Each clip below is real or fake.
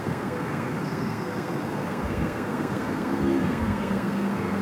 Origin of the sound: fake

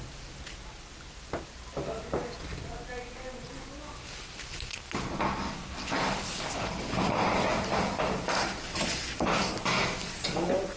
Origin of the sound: real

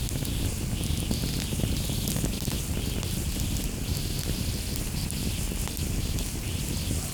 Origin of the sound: real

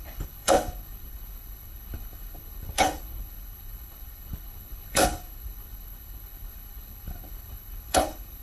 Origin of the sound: fake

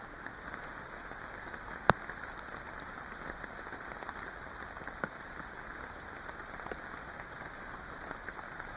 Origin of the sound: real